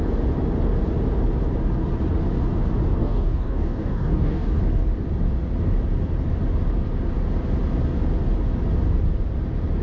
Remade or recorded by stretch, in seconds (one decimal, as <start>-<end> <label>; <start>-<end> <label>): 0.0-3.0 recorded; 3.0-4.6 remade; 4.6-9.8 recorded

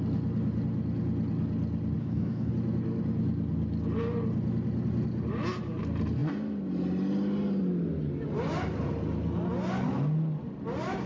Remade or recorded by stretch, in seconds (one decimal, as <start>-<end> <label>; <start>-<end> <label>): 0.0-2.0 recorded; 2.0-2.5 remade; 2.5-11.1 recorded

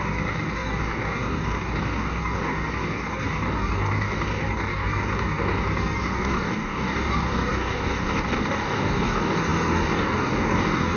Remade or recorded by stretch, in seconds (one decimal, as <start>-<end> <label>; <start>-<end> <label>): 0.0-11.0 remade

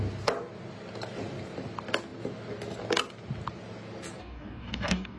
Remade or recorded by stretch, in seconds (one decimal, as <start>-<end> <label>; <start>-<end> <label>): 0.0-4.2 recorded; 4.2-5.2 remade

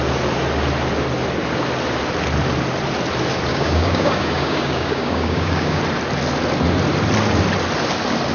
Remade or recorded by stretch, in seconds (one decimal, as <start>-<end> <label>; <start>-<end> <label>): 0.0-3.5 recorded; 3.5-5.8 remade; 5.8-8.3 recorded

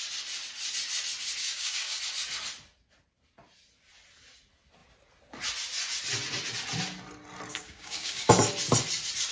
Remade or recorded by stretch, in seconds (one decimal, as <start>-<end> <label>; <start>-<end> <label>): 0.0-1.4 recorded; 1.4-2.0 remade; 2.0-7.5 recorded; 7.5-8.3 remade; 8.3-9.3 recorded

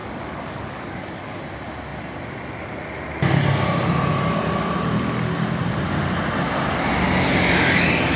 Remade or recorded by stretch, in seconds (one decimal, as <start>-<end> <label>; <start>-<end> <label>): 0.0-1.4 remade; 1.4-8.2 recorded